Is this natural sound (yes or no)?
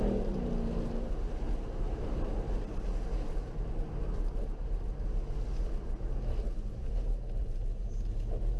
yes